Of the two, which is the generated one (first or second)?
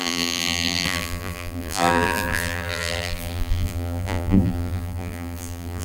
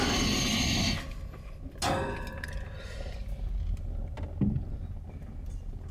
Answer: first